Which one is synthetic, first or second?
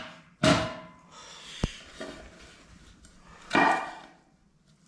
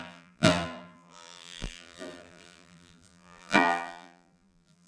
second